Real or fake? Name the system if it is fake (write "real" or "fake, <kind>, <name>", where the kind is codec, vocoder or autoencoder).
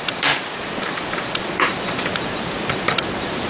fake, vocoder, BigVGAN v2